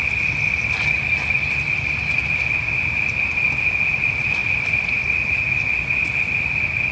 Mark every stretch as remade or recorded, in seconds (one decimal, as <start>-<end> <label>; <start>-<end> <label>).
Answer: 0.0-4.4 recorded; 4.4-5.4 remade; 5.4-6.9 recorded